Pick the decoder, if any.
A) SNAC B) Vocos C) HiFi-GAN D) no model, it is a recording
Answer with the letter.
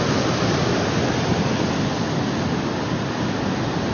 D